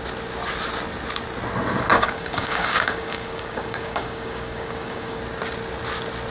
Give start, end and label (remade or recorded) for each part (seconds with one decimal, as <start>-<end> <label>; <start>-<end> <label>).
0.0-1.9 recorded; 1.9-5.2 remade; 5.2-6.3 recorded